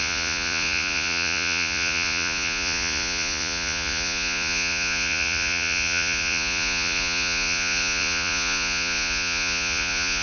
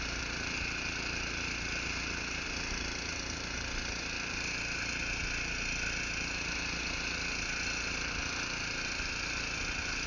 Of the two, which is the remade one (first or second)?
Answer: first